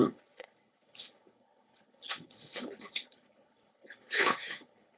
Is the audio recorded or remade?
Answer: remade